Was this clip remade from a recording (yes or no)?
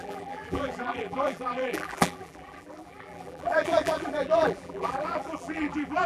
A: yes